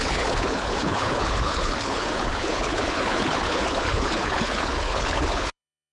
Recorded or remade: remade